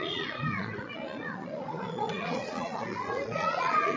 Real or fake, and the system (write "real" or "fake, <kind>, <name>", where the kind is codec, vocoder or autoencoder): fake, vocoder, Vocos